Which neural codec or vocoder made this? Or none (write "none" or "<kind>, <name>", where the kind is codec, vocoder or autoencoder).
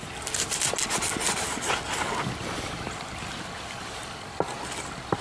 none